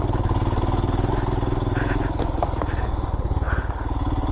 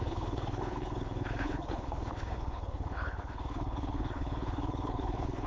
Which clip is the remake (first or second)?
second